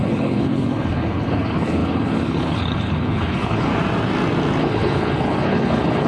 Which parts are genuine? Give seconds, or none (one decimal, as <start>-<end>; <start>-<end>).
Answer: 3.7-4.6